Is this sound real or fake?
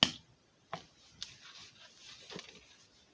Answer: real